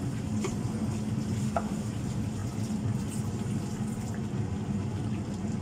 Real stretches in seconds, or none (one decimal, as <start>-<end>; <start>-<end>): 0.0-1.4; 1.9-5.6